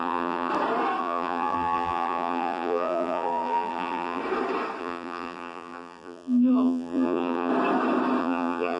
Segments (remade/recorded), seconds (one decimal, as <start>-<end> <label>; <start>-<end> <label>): 0.0-0.5 remade; 0.5-1.0 recorded; 1.0-4.2 remade; 4.2-4.8 recorded; 4.8-7.5 remade; 7.5-8.2 recorded; 8.2-8.8 remade